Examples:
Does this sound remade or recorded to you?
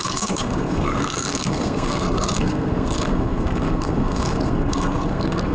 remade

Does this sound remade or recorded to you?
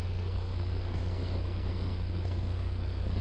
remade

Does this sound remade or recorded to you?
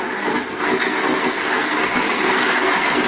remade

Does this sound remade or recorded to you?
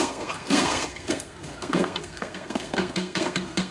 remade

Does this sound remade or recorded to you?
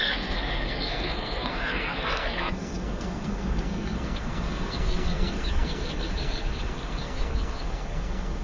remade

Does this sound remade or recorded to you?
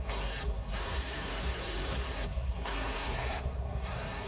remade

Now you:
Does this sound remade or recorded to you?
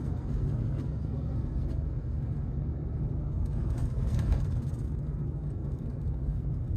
remade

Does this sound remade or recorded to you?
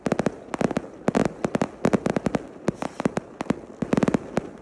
recorded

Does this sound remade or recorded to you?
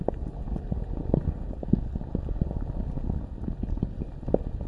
recorded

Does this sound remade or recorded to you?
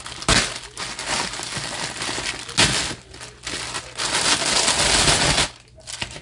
recorded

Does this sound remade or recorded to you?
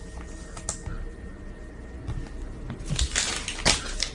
recorded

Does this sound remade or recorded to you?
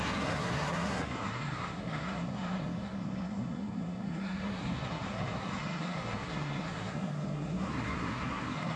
remade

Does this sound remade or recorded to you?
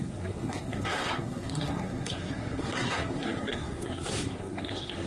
remade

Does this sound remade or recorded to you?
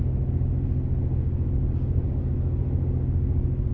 recorded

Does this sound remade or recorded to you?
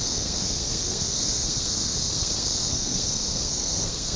remade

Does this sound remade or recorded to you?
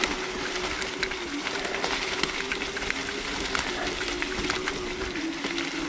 recorded